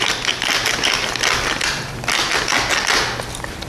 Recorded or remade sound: recorded